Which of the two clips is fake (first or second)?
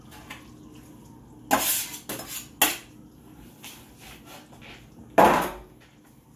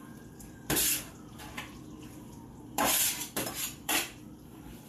second